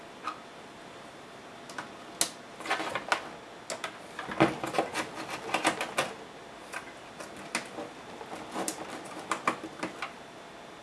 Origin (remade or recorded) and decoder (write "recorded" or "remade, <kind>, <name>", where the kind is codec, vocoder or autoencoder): recorded